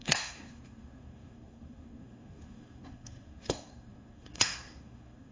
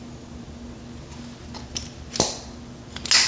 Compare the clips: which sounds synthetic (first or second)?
first